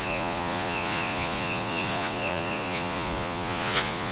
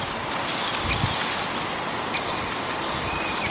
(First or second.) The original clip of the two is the second